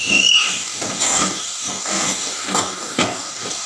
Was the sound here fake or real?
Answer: fake